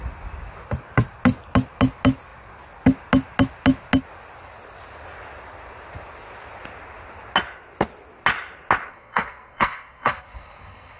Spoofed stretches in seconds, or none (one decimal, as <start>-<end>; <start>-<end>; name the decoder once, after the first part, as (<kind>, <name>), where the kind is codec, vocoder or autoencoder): 8.9-11.0 (codec, SNAC)